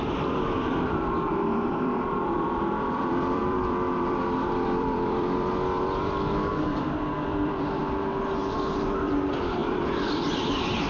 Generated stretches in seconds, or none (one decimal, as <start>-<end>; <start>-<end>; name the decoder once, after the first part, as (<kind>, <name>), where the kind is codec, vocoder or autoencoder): 0.0-7.8 (vocoder, BigVGAN v2); 8.7-9.6; 10.4-10.9